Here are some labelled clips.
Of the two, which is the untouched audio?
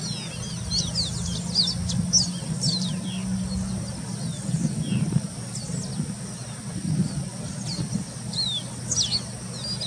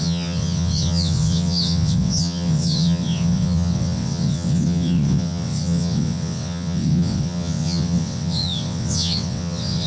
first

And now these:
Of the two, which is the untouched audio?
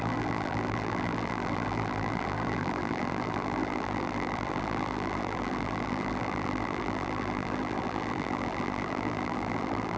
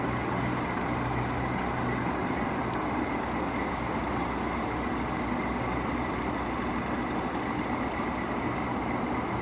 second